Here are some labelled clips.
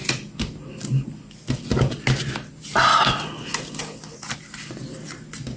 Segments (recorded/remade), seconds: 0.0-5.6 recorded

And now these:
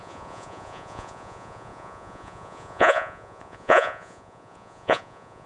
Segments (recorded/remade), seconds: 0.0-5.5 remade